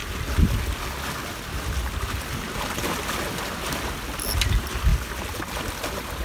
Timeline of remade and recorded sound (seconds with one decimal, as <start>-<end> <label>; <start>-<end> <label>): 0.0-6.2 recorded